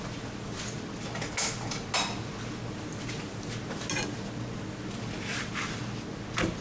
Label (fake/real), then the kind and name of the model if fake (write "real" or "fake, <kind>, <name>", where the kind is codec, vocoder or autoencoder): real